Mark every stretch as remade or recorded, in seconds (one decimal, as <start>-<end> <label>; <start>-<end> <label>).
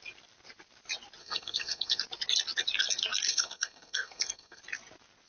0.0-1.2 recorded; 1.2-2.0 remade; 2.0-3.3 recorded; 3.3-4.6 remade; 4.6-5.3 recorded